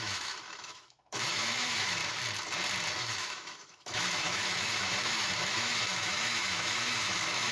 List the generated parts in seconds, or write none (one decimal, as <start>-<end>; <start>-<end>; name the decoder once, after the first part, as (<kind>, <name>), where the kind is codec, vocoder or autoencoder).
0.0-2.0 (autoencoder, DAC-VAE); 3.0-7.5